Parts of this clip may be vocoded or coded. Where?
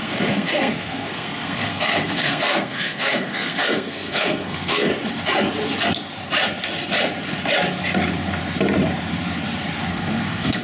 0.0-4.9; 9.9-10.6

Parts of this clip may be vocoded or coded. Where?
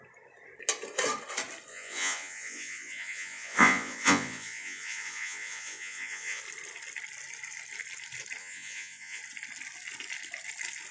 1.7-6.4; 8.4-9.2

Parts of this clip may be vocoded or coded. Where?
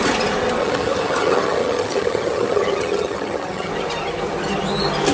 0.6-3.7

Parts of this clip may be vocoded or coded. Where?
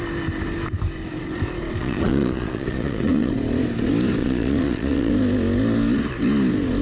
1.8-3.3; 4.2-5.1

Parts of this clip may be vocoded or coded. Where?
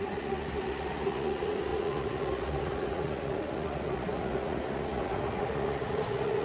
0.0-6.4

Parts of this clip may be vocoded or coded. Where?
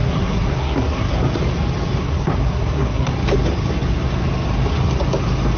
0.0-1.1; 2.0-3.1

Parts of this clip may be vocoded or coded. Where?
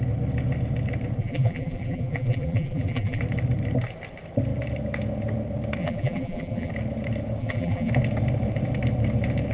1.2-3.2; 5.8-6.7; 7.4-7.9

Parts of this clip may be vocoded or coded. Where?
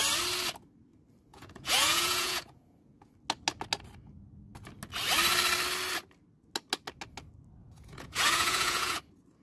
1.3-3.1; 7.6-9.0